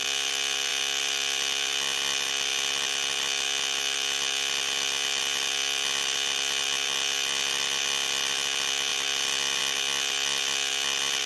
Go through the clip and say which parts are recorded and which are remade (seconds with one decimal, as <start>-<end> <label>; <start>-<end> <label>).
0.0-11.3 recorded